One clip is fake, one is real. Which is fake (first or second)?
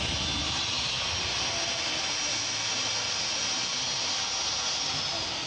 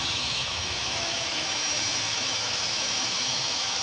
second